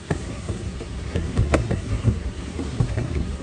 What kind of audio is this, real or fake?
fake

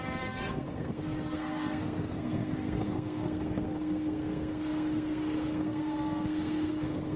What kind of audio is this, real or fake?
fake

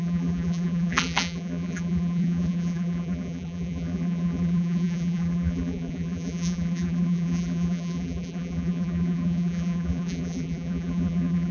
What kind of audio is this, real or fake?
fake